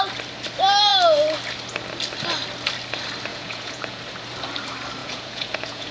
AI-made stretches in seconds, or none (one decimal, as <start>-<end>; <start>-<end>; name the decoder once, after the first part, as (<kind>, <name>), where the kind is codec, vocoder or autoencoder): 3.3-4.0 (vocoder, Vocos); 5.0-5.9